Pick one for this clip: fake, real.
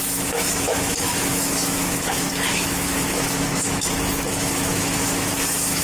fake